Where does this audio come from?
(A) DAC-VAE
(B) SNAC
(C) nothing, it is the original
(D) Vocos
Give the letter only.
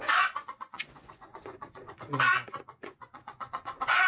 D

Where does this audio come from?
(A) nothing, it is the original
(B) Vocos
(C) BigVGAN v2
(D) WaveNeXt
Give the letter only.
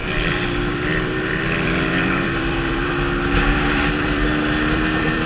C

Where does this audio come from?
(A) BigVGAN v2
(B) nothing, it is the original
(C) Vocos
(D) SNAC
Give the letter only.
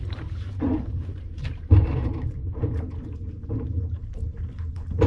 A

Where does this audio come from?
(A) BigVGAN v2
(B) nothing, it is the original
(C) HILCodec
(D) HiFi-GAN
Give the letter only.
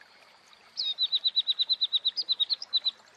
B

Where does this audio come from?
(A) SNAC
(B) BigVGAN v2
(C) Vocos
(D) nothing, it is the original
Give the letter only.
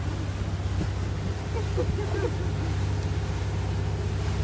D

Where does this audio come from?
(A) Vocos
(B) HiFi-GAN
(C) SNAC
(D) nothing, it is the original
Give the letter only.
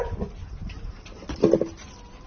D